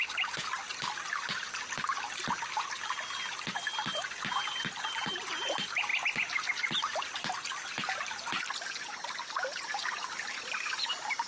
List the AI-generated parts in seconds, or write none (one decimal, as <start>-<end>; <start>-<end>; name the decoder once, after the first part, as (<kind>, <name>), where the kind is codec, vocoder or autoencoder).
none